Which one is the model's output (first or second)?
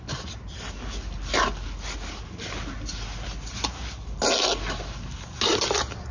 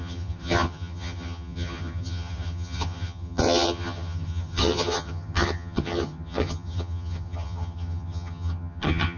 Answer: second